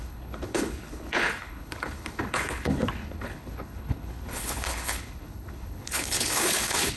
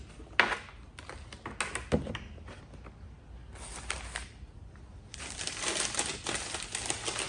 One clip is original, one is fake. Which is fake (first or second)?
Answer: first